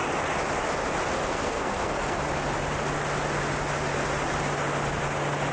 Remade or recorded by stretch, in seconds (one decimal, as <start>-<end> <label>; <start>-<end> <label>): 0.0-1.3 recorded; 1.3-2.2 remade; 2.2-5.5 recorded